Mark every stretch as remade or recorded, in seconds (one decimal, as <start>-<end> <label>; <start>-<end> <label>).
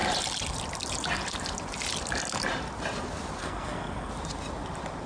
0.0-3.4 recorded; 3.4-4.1 remade; 4.1-5.1 recorded